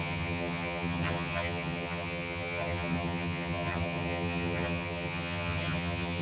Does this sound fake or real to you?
fake